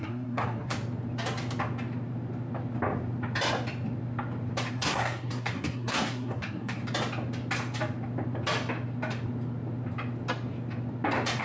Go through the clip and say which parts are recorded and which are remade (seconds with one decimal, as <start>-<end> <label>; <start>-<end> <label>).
0.0-0.7 remade; 0.7-4.7 recorded; 4.7-6.8 remade; 6.8-11.4 recorded